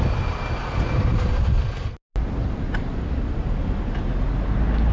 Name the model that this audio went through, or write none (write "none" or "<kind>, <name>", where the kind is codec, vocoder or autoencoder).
none